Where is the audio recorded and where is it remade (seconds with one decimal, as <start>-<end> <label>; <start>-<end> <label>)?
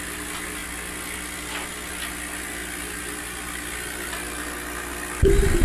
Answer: 0.0-5.6 recorded